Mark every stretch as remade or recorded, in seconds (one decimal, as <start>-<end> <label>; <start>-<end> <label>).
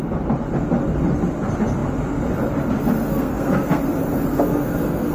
0.0-3.1 recorded; 3.1-3.8 remade; 3.8-4.3 recorded; 4.3-5.1 remade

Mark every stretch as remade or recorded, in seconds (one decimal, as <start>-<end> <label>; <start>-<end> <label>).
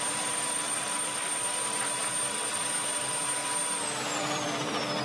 0.0-5.0 remade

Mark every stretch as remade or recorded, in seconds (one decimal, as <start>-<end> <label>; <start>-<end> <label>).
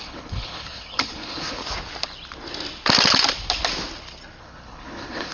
0.0-1.6 remade; 1.6-4.4 recorded; 4.4-5.3 remade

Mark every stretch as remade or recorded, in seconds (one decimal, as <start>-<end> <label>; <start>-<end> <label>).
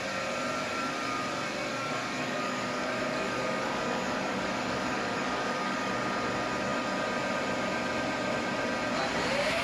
0.0-1.7 recorded; 1.7-5.9 remade; 5.9-9.6 recorded